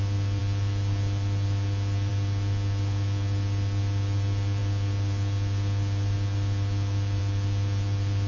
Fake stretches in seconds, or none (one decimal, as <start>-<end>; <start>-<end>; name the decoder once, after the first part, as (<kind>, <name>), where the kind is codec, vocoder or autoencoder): none

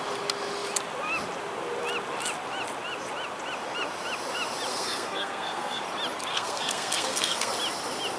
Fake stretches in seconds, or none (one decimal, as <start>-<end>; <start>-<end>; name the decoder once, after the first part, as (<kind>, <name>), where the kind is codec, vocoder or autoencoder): 4.7-5.8 (codec, SNAC); 6.3-7.5

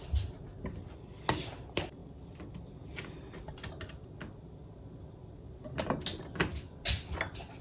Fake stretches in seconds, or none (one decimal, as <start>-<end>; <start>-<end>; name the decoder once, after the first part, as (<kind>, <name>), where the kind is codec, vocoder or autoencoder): none

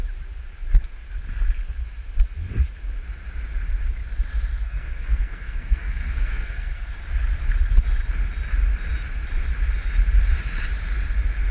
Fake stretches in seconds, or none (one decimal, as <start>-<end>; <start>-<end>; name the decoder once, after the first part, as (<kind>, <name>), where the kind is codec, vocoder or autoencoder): 4.5-7.0 (codec, SNAC)

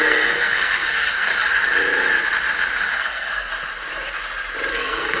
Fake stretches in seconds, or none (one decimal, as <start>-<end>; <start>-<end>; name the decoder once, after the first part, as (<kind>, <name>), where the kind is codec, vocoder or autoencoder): 0.0-1.3 (codec, SNAC); 2.9-3.5; 4.7-5.2

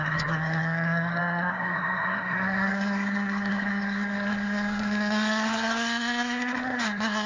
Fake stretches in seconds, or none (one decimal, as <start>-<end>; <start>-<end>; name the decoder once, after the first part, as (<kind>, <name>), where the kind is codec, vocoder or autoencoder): 0.0-7.3 (codec, SNAC)

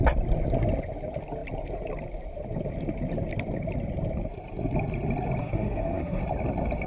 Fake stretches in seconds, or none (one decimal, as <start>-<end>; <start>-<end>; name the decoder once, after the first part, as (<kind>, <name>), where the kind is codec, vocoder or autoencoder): 5.4-6.2 (codec, SNAC)

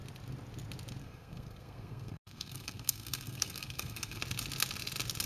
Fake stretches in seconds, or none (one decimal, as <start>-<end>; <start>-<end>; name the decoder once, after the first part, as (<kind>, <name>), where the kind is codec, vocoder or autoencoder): 1.0-4.2 (codec, SNAC)